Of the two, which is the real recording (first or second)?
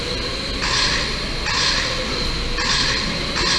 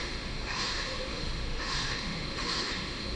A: first